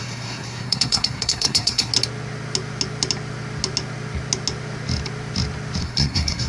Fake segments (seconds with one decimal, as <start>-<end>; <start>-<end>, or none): 0.0-1.9; 5.8-6.5